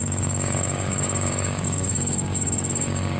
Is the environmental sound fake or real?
fake